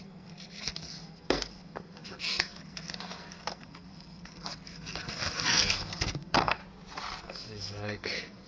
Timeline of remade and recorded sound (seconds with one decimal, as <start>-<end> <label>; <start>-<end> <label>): 0.0-6.6 remade; 6.6-7.2 recorded; 7.2-8.5 remade